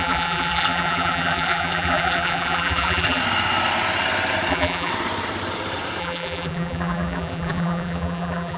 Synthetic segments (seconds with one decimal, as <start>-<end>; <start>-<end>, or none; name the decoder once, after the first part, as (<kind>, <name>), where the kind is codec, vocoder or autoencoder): 0.0-3.2 (vocoder, BigVGAN v2); 4.5-4.9; 6.0-8.6

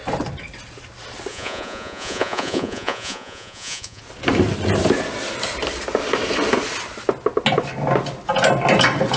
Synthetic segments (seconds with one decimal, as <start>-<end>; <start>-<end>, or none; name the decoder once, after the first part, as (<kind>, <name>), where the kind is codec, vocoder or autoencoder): 1.3-4.0 (vocoder, Vocos)

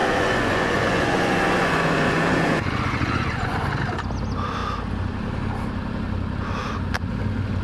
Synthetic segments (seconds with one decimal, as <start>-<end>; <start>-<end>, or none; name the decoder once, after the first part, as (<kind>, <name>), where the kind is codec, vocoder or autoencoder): 0.0-3.7 (vocoder, Vocos)

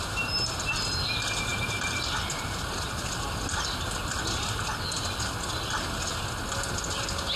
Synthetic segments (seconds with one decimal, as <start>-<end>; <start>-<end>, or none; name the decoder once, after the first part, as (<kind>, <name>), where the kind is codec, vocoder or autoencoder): none